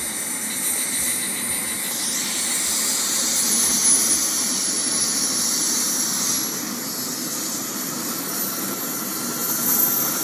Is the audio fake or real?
real